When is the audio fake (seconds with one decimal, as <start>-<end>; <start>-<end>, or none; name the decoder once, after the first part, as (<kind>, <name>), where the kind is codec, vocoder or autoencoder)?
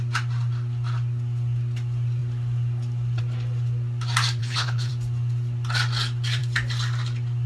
4.4-4.9 (codec, HILCodec)